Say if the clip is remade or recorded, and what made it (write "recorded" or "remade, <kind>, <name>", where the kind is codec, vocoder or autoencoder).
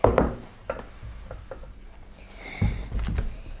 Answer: remade, vocoder, BigVGAN v2